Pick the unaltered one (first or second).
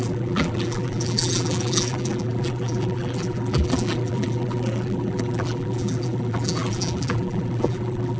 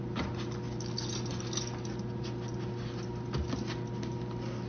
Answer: second